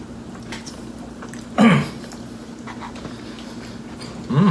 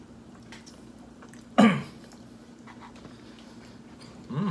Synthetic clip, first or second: second